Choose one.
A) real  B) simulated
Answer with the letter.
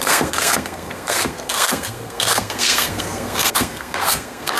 B